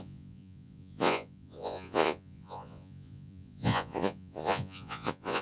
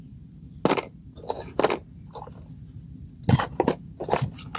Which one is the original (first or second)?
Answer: second